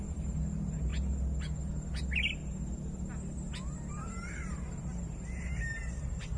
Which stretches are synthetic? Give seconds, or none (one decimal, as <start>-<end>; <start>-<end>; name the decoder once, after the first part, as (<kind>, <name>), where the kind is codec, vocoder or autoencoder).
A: 0.0-0.9 (vocoder, BigVGAN v2); 3.9-6.4

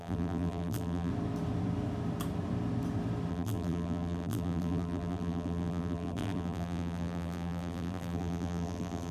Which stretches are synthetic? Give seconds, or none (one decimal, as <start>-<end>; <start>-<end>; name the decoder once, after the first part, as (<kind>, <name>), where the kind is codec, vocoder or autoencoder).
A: 0.0-1.1 (vocoder, BigVGAN v2); 3.3-9.1

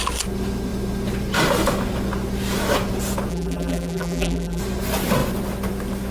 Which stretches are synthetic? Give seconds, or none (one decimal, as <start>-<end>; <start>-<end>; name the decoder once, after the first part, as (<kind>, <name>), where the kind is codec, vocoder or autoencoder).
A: 3.3-4.6 (vocoder, BigVGAN v2)

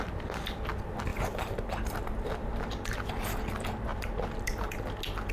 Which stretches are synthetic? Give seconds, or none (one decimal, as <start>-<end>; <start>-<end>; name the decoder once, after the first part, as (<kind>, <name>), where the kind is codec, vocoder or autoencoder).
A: 1.1-3.1 (vocoder, BigVGAN v2); 3.9-4.7

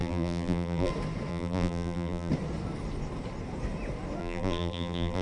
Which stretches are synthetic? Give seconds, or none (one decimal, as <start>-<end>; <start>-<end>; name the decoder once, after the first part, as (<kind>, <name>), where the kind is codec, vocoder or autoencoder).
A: 0.0-0.9 (vocoder, BigVGAN v2); 1.3-2.3; 4.2-5.2

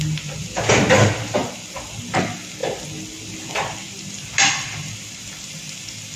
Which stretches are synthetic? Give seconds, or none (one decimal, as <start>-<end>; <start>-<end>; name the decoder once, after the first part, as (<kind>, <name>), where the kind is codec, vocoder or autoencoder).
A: none

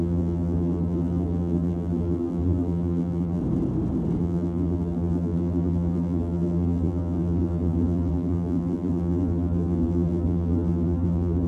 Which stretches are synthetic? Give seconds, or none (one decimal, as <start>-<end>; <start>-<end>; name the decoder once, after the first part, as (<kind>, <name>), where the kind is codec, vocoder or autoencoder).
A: 0.0-3.4 (vocoder, BigVGAN v2); 4.2-11.5

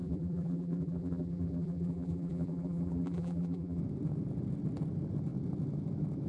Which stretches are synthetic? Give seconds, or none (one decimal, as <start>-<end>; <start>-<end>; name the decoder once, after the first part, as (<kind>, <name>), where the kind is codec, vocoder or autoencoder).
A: 0.0-3.8 (vocoder, BigVGAN v2)